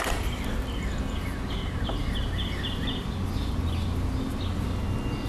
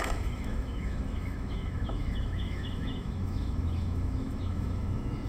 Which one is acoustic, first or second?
first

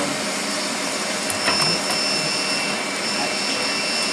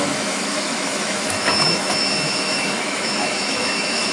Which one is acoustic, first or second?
first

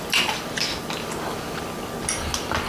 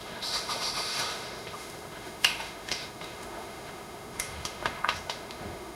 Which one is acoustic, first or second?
first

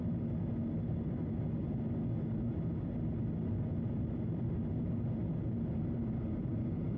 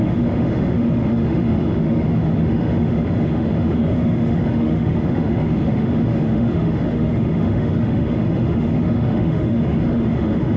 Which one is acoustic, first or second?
first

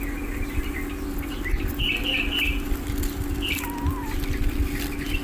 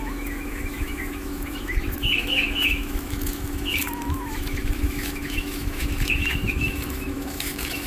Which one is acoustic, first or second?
first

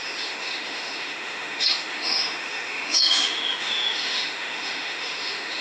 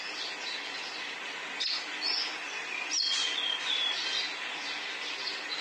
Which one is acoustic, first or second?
second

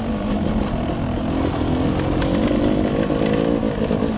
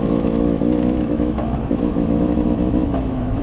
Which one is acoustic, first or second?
first